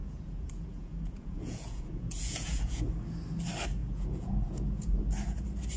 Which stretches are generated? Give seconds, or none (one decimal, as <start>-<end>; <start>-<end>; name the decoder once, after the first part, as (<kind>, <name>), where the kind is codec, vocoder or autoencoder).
0.0-2.9 (vocoder, Vocos); 3.8-5.0